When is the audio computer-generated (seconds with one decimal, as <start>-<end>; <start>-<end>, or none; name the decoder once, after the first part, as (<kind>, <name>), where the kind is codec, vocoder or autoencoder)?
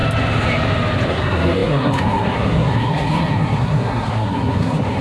1.1-5.0 (codec, SNAC)